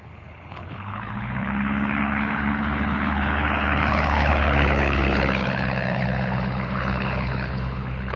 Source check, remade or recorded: remade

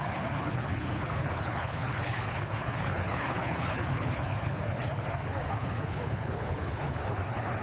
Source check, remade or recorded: remade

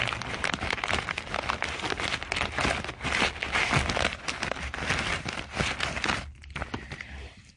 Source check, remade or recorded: recorded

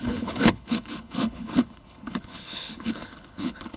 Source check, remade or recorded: remade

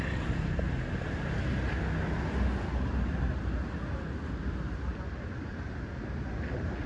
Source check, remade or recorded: recorded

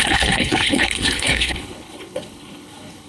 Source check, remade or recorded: remade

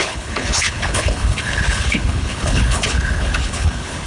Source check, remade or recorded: remade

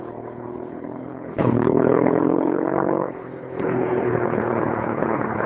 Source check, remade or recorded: remade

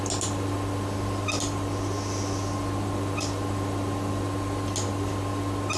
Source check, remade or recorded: recorded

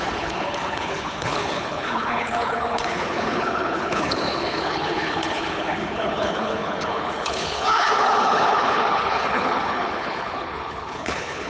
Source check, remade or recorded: remade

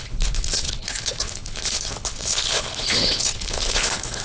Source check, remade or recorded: remade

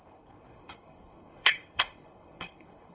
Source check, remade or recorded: remade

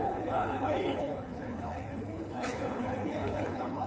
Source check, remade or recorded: remade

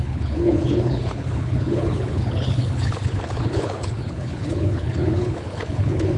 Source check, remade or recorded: remade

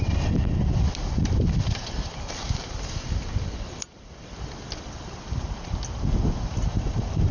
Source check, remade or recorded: recorded